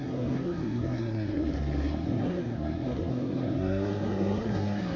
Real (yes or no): no